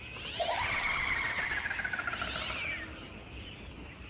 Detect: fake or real real